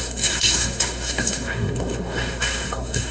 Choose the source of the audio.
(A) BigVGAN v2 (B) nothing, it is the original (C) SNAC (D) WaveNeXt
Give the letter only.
C